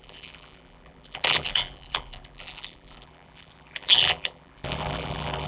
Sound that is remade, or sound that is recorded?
remade